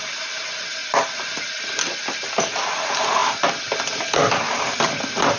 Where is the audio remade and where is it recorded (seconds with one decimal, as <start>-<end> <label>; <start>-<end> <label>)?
0.0-5.4 recorded